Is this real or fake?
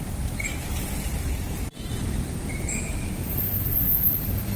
fake